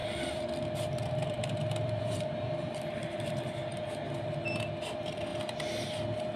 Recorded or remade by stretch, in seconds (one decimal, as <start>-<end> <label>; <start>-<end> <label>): 0.0-3.8 remade; 3.8-6.4 recorded